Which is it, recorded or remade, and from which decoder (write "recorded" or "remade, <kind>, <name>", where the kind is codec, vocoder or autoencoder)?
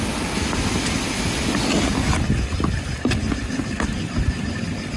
recorded